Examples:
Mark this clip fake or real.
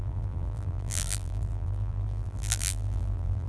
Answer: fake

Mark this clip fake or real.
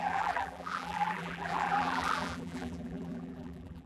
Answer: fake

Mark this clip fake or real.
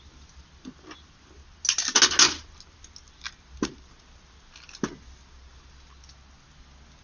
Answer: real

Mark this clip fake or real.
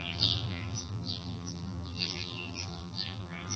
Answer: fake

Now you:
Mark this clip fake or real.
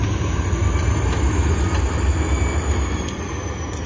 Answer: fake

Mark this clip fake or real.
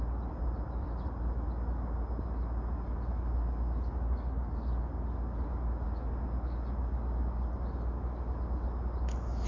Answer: real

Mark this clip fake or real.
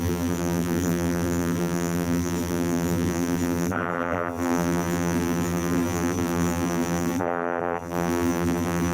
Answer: fake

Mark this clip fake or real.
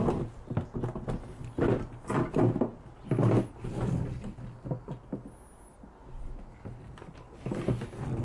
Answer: real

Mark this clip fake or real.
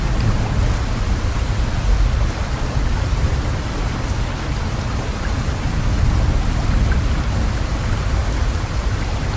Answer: real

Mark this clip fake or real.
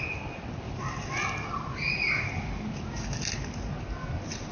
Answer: real